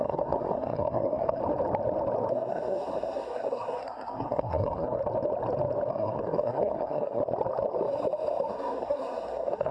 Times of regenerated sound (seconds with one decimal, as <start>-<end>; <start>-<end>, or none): 0.0-1.4; 2.3-5.0; 5.9-7.2; 8.5-9.7